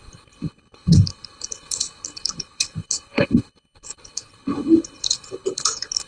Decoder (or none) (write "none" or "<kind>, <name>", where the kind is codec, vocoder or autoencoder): codec, HILCodec